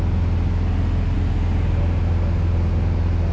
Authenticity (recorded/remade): recorded